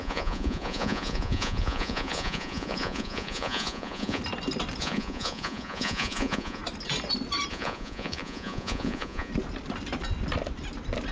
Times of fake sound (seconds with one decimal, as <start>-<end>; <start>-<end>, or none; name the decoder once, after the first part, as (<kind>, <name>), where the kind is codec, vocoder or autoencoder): 0.0-4.2 (vocoder, Vocos); 4.8-6.6; 7.5-9.3